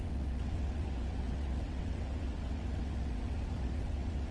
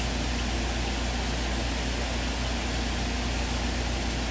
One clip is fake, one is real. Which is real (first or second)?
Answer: second